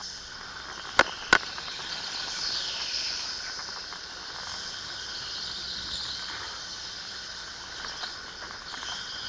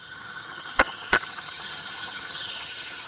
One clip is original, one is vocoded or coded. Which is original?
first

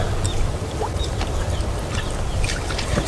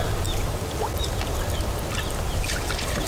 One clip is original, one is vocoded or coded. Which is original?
second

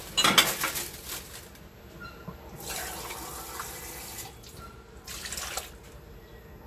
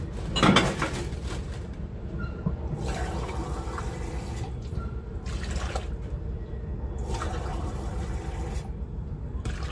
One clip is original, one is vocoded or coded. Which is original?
first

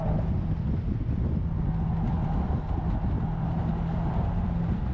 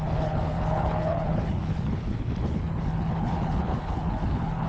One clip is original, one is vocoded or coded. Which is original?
first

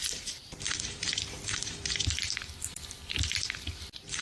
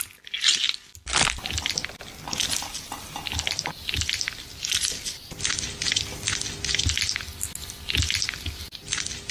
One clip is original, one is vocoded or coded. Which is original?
second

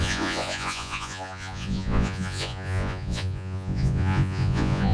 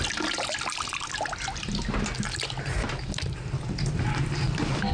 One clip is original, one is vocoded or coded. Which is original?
second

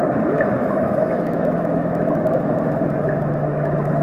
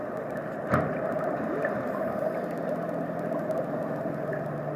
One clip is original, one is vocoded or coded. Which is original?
second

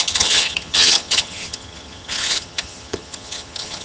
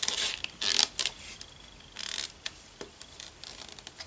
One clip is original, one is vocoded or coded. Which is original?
second